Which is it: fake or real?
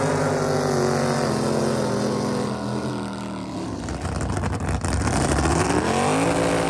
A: real